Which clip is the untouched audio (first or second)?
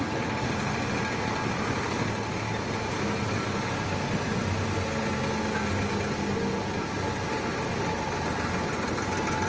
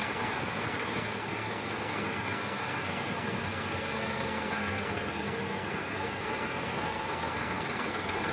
first